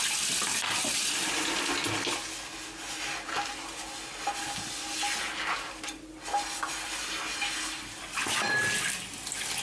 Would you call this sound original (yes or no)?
yes